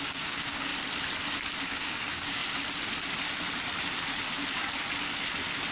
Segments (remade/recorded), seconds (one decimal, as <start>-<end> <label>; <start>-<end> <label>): 0.0-0.7 remade; 0.7-1.6 recorded; 1.6-2.4 remade; 2.4-5.7 recorded